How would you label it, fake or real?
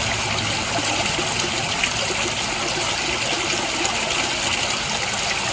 real